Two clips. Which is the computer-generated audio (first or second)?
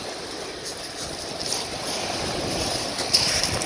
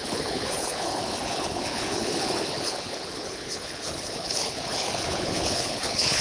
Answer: second